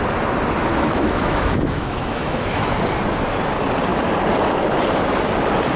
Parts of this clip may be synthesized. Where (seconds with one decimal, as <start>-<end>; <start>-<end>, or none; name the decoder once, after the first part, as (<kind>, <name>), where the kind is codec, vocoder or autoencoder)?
0.7-2.6 (autoencoder, DAC-VAE)